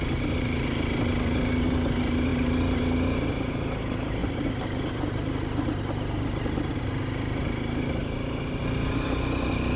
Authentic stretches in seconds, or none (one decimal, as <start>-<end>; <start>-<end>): 0.0-4.2; 5.8-9.8